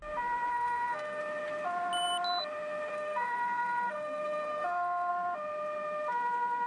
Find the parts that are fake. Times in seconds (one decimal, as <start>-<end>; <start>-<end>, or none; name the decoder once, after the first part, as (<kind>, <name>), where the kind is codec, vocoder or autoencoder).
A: 0.5-1.2 (codec, SNAC); 2.9-5.1